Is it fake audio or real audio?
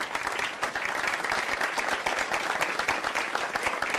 real